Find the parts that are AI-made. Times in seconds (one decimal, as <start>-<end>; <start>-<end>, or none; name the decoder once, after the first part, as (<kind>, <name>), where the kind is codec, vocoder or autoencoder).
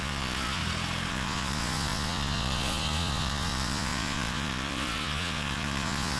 0.0-0.6 (vocoder, Vocos); 1.1-6.2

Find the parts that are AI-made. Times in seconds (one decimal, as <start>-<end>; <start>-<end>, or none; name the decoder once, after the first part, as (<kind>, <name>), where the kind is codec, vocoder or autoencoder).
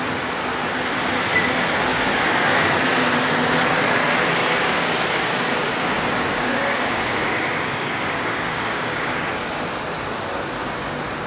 1.9-2.8 (codec, DAC); 4.4-9.2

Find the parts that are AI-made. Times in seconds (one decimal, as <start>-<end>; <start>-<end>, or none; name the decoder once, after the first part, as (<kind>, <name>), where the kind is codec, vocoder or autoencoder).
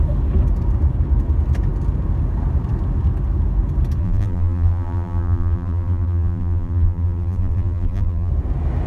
4.0-8.3 (vocoder, BigVGAN v2)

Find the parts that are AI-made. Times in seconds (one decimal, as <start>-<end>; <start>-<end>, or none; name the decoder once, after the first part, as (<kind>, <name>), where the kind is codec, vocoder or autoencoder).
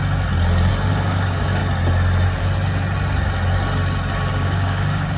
0.7-1.6 (codec, DAC); 4.3-5.2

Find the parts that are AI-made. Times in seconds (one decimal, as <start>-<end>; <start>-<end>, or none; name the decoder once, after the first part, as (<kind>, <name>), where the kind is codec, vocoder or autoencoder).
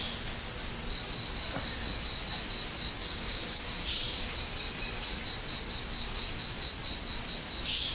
3.0-3.6 (codec, DAC)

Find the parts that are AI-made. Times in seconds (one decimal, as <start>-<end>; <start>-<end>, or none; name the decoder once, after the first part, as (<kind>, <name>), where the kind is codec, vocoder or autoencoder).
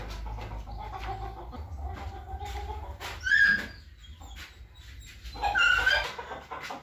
none